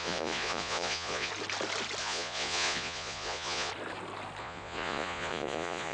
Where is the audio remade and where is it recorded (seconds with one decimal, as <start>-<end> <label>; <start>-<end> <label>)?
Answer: 0.0-1.3 remade; 1.3-2.0 recorded; 2.0-3.7 remade; 3.7-4.4 recorded; 4.4-5.9 remade